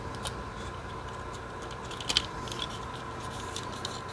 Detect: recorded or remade remade